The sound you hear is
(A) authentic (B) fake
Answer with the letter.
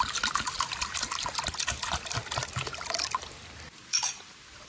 A